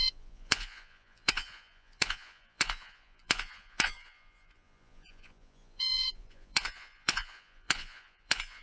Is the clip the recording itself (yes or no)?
no